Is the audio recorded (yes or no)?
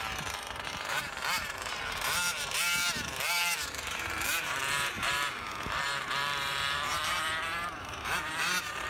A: no